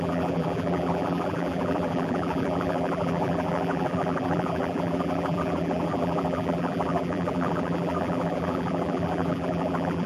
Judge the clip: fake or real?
fake